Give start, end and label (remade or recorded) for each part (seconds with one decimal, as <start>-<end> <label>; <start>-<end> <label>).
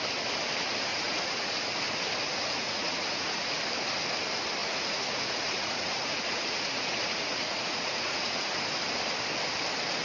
0.0-0.9 recorded; 0.9-1.5 remade; 1.5-2.3 recorded; 2.3-3.6 remade; 3.6-4.6 recorded; 4.6-8.6 remade; 8.6-10.0 recorded